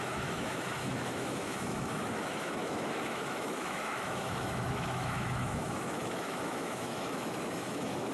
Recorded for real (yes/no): no